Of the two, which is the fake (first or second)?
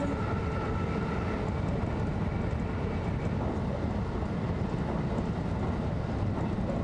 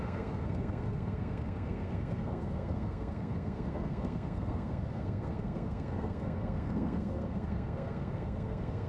second